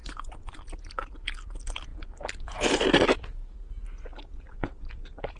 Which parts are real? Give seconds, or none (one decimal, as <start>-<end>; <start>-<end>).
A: 0.6-5.4